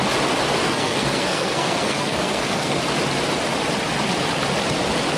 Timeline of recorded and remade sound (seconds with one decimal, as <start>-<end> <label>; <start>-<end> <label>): 0.0-0.6 recorded; 0.6-2.8 remade; 2.8-5.2 recorded